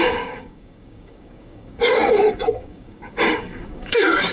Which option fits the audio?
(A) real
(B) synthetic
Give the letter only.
B